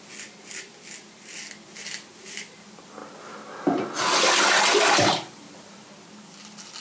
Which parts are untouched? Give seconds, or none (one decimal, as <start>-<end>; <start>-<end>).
0.0-6.8